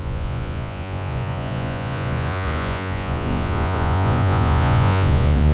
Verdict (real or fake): fake